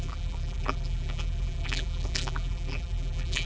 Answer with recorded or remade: remade